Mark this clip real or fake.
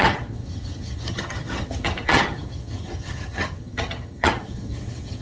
fake